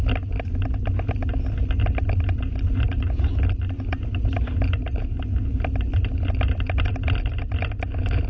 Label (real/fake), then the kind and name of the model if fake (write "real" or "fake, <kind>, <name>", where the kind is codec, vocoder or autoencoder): real